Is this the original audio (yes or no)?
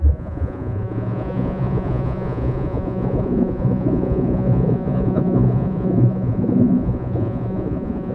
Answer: no